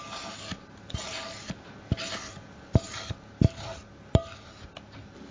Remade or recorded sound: recorded